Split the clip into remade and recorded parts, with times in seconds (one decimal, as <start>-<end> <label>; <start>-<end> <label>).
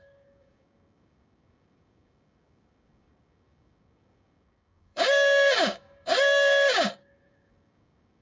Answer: 0.0-8.2 remade